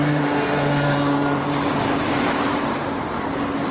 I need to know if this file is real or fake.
fake